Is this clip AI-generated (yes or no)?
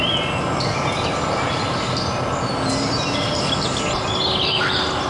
no